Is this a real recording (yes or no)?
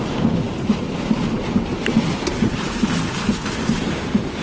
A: yes